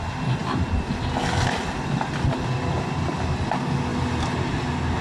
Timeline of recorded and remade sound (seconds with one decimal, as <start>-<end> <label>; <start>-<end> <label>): 0.0-5.0 recorded